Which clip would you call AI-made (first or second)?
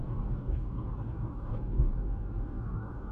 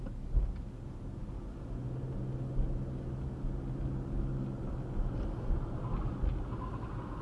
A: first